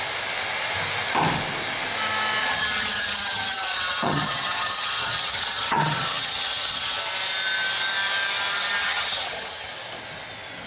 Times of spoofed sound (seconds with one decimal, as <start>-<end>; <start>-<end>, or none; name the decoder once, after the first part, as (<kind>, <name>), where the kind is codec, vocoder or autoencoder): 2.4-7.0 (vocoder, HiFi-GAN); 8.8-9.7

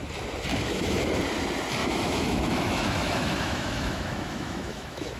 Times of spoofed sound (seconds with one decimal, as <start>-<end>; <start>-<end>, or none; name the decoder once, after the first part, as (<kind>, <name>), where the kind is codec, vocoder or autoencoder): 0.5-1.2 (autoencoder, DAC-VAE); 1.8-5.2

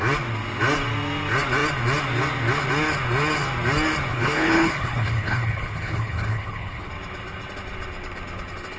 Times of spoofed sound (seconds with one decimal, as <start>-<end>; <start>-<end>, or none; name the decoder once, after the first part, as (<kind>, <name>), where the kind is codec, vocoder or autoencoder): 4.1-6.9 (codec, HILCodec)

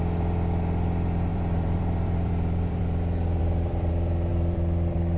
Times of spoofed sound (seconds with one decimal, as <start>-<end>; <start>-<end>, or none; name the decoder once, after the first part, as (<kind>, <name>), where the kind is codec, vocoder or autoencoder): 1.3-2.8 (vocoder, BigVGAN v2); 3.4-3.9; 4.3-5.2

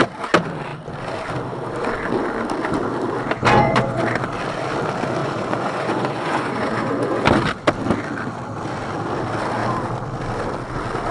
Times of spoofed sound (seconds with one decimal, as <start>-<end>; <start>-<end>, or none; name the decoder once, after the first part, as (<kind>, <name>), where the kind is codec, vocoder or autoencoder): 3.4-4.0 (vocoder, Vocos); 5.2-7.2

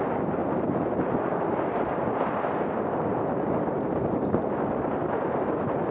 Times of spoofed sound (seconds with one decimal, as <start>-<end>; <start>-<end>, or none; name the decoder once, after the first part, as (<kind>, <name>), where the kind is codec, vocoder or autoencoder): none

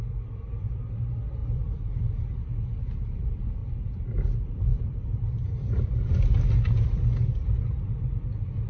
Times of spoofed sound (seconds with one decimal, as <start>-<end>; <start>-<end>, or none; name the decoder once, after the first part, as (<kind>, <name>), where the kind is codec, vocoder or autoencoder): 1.4-2.4 (vocoder, BigVGAN v2)